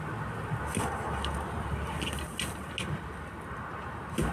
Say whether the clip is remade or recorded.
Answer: recorded